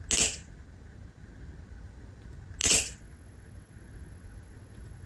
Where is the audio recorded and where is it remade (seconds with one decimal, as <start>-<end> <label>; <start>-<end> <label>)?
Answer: 0.0-2.6 recorded; 2.6-5.1 remade